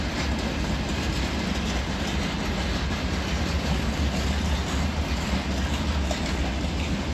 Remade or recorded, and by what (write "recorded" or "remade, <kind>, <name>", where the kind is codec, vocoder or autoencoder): recorded